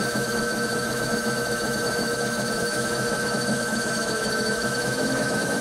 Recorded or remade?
remade